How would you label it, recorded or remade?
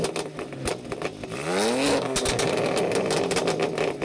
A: recorded